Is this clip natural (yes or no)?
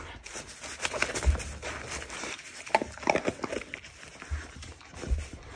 yes